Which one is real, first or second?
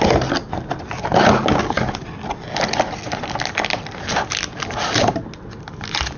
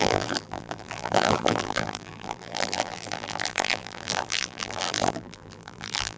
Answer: first